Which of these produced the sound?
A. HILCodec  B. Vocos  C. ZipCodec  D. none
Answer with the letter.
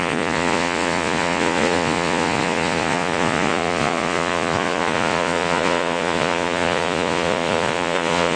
B